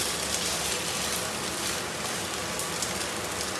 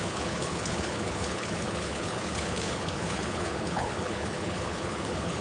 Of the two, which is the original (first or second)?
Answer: first